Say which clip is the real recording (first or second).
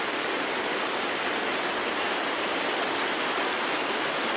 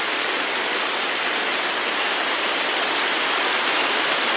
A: first